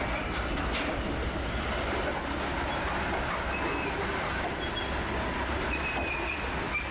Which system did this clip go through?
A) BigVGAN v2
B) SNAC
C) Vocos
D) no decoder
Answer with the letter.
D